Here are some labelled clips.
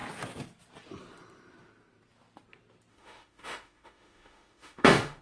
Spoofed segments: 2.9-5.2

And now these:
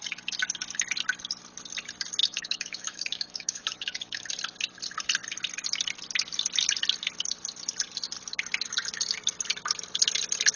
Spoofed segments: 2.2-4.3

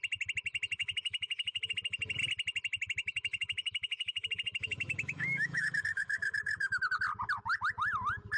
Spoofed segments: 0.8-1.7; 3.0-6.8

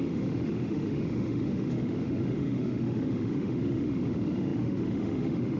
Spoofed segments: 0.0-5.6